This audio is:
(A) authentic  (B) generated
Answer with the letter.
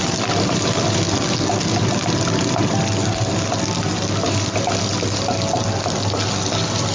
A